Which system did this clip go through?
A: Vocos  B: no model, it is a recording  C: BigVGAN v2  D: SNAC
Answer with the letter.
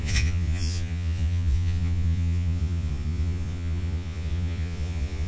A